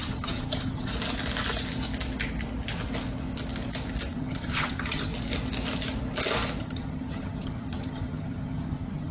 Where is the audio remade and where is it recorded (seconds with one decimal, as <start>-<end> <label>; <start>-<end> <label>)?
0.0-0.9 remade; 0.9-4.1 recorded; 4.1-5.1 remade; 5.1-6.6 recorded; 6.6-9.1 remade